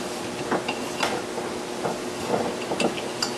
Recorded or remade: recorded